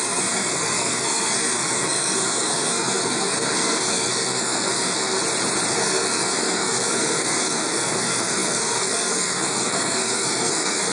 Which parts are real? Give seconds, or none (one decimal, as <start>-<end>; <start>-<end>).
5.2-5.7